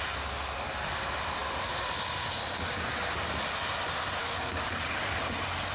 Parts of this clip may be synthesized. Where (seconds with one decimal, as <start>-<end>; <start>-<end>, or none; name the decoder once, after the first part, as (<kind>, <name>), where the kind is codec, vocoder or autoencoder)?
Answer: 4.2-5.2 (codec, DAC)